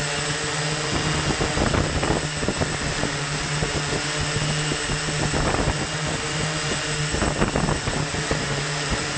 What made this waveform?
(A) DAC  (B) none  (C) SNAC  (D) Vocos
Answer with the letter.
B